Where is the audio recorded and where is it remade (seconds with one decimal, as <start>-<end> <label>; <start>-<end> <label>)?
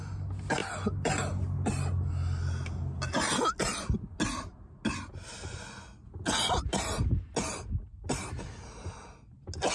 0.0-9.7 recorded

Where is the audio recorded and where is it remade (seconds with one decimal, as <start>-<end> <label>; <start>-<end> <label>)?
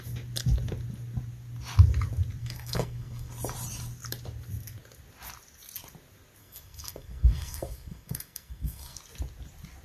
0.0-2.4 recorded; 2.4-3.3 remade; 3.3-6.4 recorded; 6.4-9.0 remade; 9.0-9.8 recorded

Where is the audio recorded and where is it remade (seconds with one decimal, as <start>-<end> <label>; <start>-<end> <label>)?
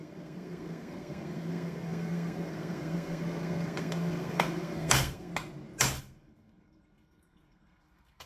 0.0-5.3 remade; 5.3-6.0 recorded; 6.0-8.3 remade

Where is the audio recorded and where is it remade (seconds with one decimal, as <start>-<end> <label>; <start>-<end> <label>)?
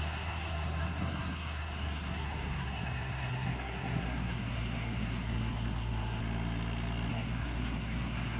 0.0-6.2 remade; 6.2-7.1 recorded; 7.1-8.4 remade